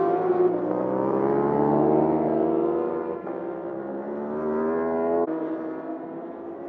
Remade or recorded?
recorded